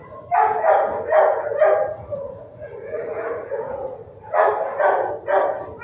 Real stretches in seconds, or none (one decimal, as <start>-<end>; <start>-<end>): 0.0-2.1; 4.5-5.8